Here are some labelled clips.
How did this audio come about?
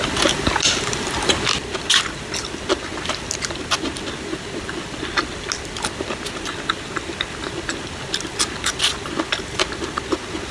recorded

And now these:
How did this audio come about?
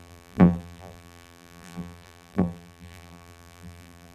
remade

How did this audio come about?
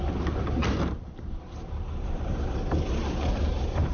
remade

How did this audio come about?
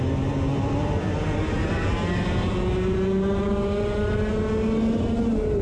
recorded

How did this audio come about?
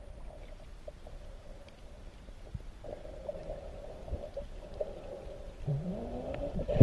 remade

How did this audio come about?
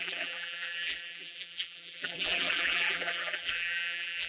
remade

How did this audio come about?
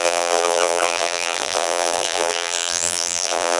remade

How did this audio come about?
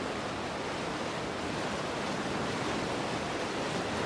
recorded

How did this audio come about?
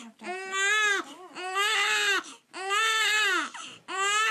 recorded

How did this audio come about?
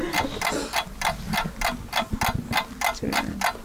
recorded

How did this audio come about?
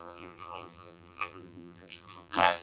remade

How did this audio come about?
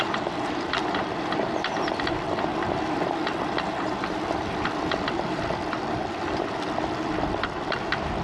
remade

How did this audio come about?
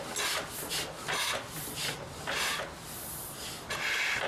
recorded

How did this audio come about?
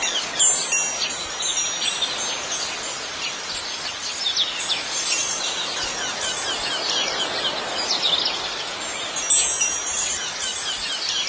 recorded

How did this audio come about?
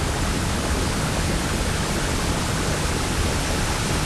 recorded